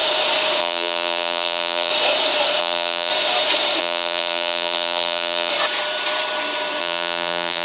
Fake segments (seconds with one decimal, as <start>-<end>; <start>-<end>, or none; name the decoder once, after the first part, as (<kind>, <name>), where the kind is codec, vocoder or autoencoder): 0.6-1.9 (vocoder, BigVGAN v2); 2.6-3.1; 3.8-5.5; 6.8-7.6